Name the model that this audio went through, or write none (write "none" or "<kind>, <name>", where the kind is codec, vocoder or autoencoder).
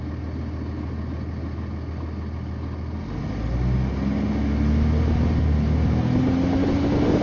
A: none